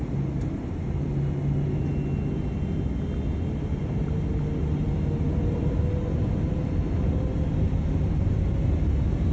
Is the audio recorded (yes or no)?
yes